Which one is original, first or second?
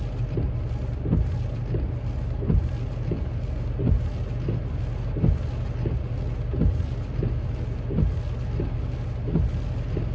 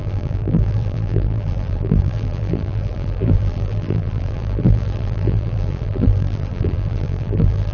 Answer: first